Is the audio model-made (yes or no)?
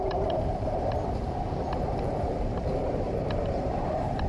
yes